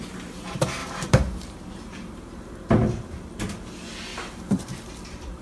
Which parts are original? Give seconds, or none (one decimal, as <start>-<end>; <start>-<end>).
0.0-0.8; 2.7-4.1; 4.7-5.4